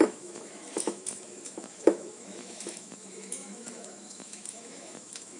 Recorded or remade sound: remade